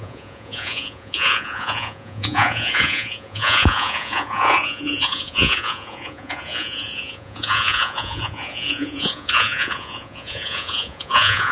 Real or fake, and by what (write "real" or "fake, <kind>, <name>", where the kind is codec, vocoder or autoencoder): fake, vocoder, Vocos